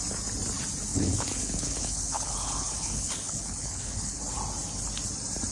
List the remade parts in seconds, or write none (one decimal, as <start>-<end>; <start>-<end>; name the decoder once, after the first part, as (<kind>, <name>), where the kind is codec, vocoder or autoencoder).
0.9-4.2 (codec, HILCodec)